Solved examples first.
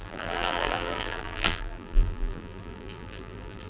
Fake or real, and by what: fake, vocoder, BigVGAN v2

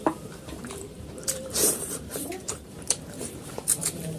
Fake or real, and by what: fake, vocoder, BigVGAN v2